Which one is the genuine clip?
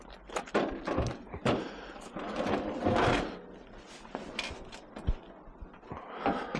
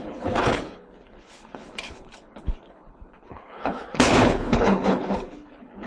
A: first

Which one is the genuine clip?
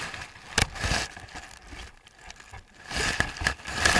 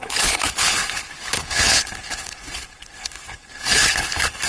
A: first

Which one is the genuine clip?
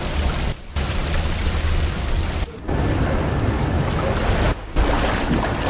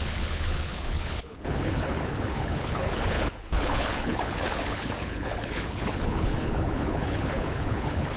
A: first